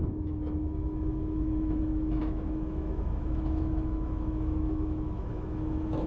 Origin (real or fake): fake